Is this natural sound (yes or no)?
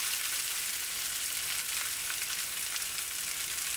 yes